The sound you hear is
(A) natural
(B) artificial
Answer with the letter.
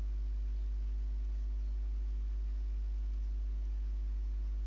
A